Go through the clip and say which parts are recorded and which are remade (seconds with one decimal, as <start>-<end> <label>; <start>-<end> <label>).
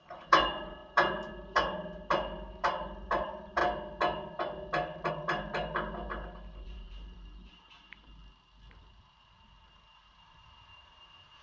0.0-3.6 remade; 3.6-5.1 recorded; 5.1-8.2 remade; 8.2-8.9 recorded; 8.9-11.4 remade